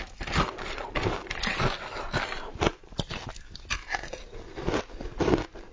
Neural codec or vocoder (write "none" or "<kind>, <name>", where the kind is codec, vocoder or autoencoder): none